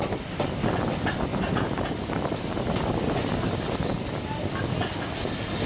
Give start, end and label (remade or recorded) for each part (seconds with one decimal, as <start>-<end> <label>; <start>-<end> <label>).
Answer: 0.0-1.3 recorded; 1.3-4.5 remade; 4.5-5.7 recorded